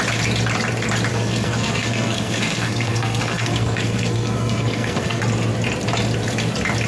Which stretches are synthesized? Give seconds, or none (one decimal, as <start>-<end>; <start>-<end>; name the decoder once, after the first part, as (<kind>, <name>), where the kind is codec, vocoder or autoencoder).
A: 1.1-5.2 (codec, SNAC)